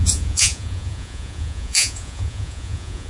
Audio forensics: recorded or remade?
remade